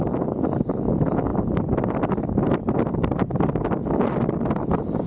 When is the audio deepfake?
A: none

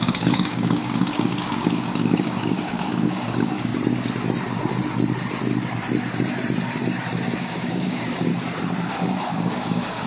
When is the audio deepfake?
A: 0.0-3.7 (codec, DAC); 7.4-8.3; 8.9-10.1

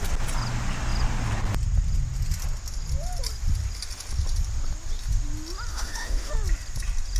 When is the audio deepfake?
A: 5.7-6.3 (autoencoder, DAC-VAE)

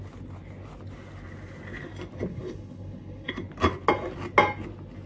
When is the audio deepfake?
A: 2.3-3.3 (codec, HILCodec)

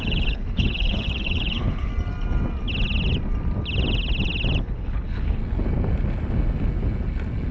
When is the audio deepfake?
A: 0.0-1.9 (codec, HILCodec); 4.6-5.4

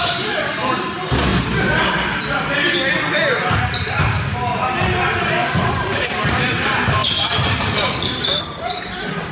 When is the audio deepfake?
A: 0.0-1.3 (vocoder, BigVGAN v2); 3.6-9.3

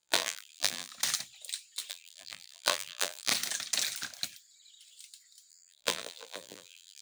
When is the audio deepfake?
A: 0.0-0.9 (vocoder, BigVGAN v2); 1.9-3.3; 5.5-7.0

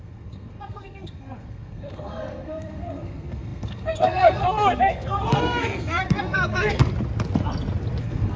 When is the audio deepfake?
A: 0.0-6.8 (codec, SNAC); 8.0-8.4